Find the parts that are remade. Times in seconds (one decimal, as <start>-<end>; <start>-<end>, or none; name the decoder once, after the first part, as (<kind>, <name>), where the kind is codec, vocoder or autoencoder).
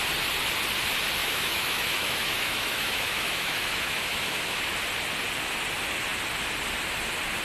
1.2-4.7 (autoencoder, DAC-VAE)